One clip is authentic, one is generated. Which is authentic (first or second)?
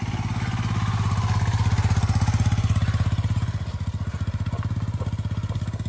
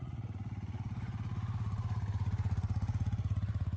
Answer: first